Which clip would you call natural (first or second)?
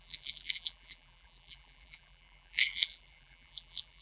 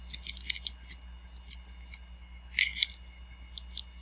second